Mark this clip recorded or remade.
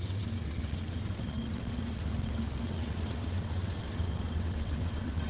remade